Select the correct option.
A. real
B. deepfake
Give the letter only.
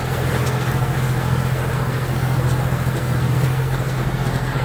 B